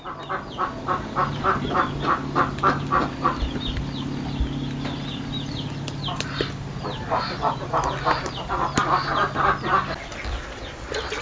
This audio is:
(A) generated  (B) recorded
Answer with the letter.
B